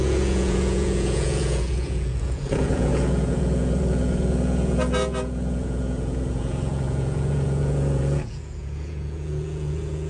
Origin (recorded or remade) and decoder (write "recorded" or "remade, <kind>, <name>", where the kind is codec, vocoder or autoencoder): remade, vocoder, Vocos